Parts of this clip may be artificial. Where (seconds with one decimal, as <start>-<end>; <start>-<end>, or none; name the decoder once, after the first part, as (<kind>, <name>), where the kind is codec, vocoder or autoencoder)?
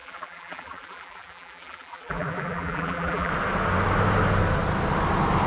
0.0-3.3 (vocoder, BigVGAN v2)